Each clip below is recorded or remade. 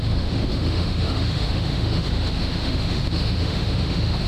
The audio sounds remade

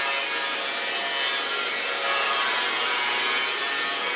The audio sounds recorded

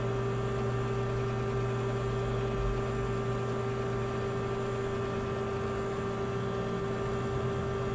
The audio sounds recorded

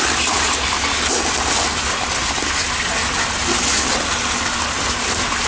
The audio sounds recorded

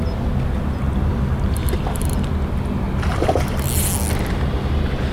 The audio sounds recorded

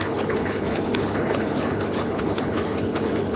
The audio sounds remade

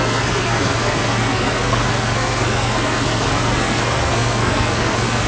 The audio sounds remade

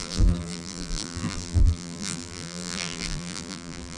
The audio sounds remade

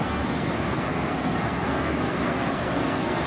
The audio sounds remade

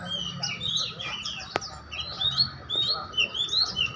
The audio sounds recorded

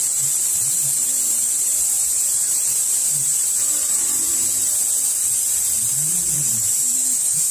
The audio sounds remade